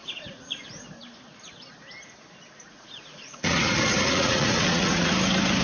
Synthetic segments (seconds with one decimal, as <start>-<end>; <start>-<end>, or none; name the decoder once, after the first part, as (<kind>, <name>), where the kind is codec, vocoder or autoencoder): 0.0-0.9 (vocoder, Vocos); 2.7-5.1